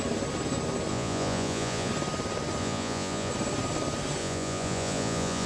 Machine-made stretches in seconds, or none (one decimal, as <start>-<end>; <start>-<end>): 0.9-1.9; 2.6-3.3; 4.2-5.5